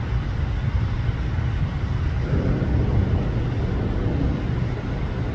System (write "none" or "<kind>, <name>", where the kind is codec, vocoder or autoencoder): none